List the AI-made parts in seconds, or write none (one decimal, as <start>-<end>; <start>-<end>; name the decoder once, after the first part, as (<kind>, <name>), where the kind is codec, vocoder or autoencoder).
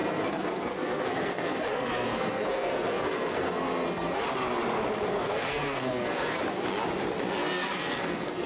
0.0-4.2 (codec, SNAC); 5.1-6.4; 7.4-8.5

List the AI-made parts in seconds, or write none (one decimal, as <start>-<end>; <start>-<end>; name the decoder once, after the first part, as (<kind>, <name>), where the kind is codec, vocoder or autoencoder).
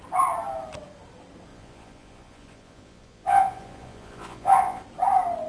1.5-4.8 (vocoder, Vocos)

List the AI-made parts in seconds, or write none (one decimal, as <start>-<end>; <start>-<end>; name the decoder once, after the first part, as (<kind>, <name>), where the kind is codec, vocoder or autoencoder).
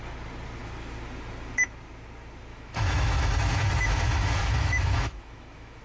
2.5-3.3 (autoencoder, DAC-VAE); 4.4-5.8